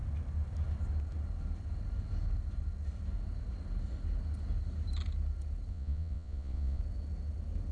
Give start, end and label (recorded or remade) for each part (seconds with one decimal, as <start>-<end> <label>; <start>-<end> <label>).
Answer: 0.0-5.7 recorded; 5.7-6.8 remade; 6.8-7.7 recorded